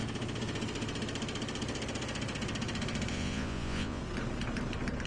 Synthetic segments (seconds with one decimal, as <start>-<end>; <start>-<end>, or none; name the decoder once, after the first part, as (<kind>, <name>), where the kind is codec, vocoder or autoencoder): 3.1-4.0 (vocoder, Vocos)